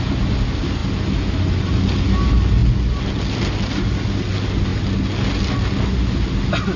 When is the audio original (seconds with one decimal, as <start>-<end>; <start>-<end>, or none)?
0.0-6.8